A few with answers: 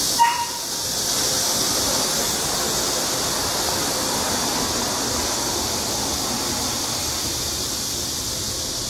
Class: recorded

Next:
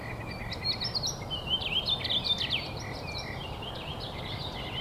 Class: remade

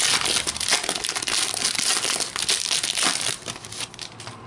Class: recorded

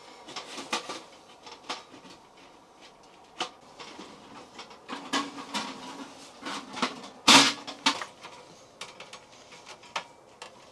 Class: recorded